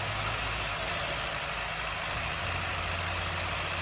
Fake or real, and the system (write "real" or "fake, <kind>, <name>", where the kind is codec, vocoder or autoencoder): real